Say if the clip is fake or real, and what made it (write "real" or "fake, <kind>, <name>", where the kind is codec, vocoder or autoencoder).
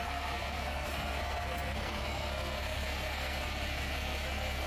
fake, codec, SNAC